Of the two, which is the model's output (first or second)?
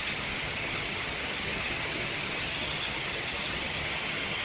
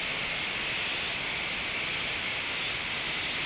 first